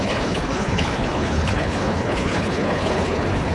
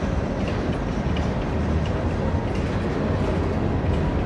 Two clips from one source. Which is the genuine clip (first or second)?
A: second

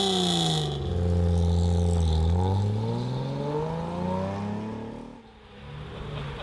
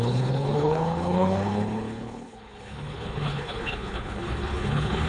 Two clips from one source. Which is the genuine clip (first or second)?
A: first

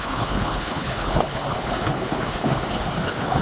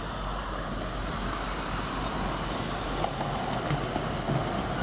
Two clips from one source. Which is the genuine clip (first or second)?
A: second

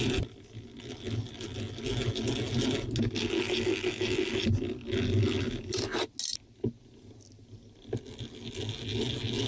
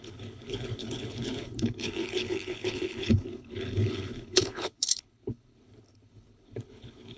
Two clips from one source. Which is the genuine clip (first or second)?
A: first